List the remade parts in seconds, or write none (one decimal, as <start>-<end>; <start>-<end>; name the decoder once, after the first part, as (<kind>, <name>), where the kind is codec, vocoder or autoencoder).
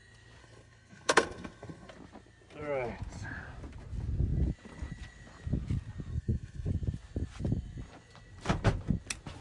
0.4-1.9 (codec, SNAC); 6.1-6.7